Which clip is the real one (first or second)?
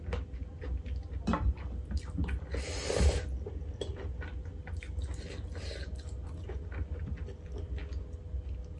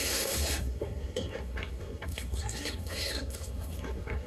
first